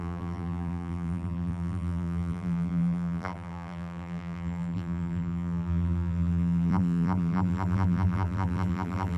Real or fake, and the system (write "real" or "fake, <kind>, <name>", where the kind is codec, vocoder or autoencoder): fake, vocoder, BigVGAN v2